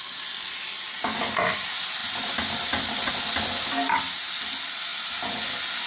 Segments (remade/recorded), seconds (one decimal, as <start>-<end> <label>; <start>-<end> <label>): 0.0-5.9 recorded